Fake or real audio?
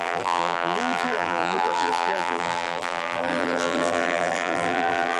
fake